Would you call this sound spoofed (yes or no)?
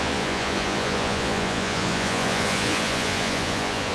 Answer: yes